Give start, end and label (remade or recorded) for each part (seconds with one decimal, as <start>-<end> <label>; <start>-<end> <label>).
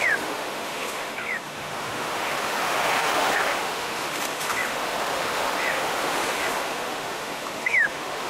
0.0-8.3 remade